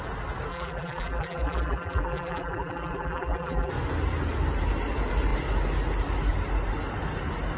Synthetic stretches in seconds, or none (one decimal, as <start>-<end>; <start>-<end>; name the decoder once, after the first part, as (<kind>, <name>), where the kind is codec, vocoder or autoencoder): 0.5-3.7 (vocoder, BigVGAN v2)